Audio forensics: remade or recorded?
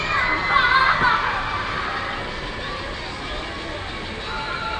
recorded